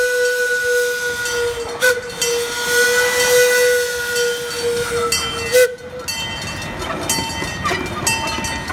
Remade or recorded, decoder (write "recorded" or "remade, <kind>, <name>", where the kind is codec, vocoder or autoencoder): recorded